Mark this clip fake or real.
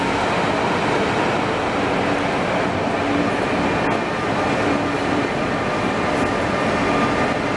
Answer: real